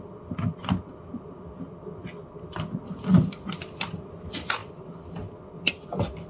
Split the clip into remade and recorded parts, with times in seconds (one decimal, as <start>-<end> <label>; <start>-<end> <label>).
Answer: 0.0-6.3 recorded